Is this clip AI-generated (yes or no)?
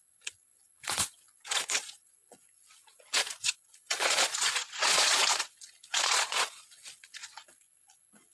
yes